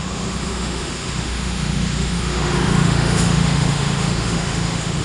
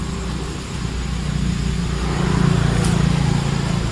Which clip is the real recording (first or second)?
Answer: second